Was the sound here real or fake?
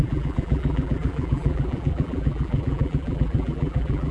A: fake